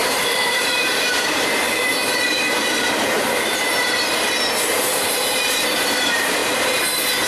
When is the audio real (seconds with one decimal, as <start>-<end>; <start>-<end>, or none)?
3.7-4.7; 6.4-7.3